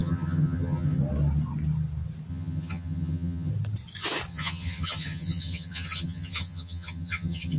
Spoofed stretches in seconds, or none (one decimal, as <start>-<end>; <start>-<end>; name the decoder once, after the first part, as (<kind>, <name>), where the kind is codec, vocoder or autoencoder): 0.0-1.0 (vocoder, HiFi-GAN); 2.3-3.5; 4.3-7.6